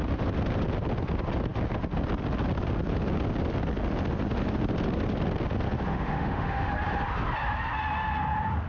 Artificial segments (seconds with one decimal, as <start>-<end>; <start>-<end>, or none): 5.9-6.7